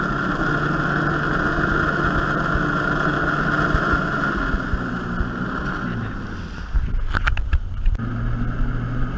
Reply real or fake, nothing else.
real